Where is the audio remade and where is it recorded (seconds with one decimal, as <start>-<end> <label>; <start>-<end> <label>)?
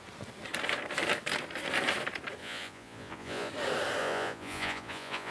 0.0-2.4 recorded; 2.4-3.5 remade; 3.5-4.0 recorded; 4.0-5.3 remade